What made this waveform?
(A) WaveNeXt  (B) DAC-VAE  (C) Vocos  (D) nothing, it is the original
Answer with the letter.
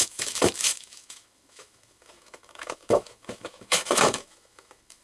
B